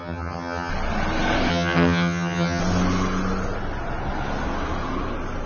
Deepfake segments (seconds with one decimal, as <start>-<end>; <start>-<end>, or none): 0.0-0.7; 1.5-2.6